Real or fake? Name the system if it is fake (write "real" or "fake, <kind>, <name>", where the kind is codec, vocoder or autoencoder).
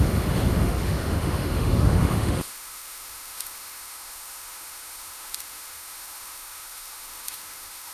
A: fake, autoencoder, DAC-VAE